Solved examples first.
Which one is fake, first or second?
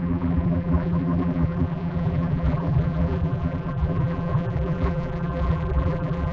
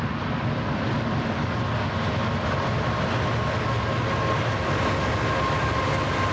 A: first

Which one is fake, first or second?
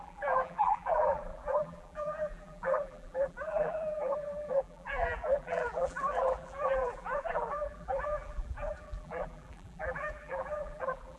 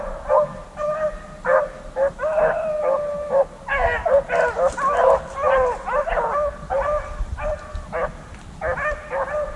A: first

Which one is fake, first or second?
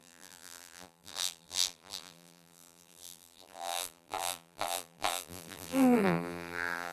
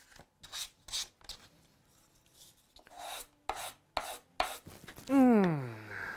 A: first